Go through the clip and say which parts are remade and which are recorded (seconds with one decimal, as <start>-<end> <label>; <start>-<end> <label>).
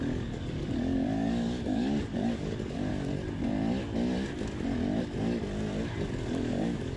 0.0-2.9 remade; 2.9-6.4 recorded; 6.4-7.0 remade